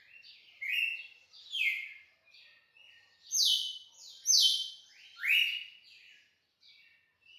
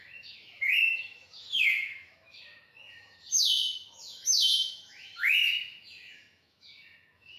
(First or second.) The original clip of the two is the first